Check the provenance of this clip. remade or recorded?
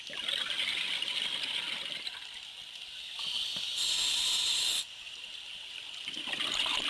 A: recorded